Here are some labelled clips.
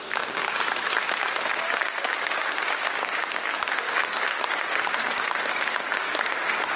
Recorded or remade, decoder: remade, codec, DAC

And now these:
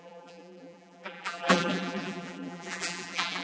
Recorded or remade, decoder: remade, vocoder, BigVGAN v2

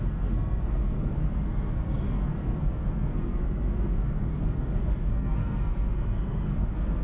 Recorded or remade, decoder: remade, codec, SNAC